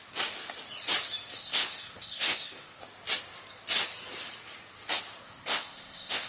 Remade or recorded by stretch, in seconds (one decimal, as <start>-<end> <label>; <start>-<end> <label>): 0.0-1.4 recorded; 1.4-2.8 remade; 2.8-5.2 recorded; 5.2-6.3 remade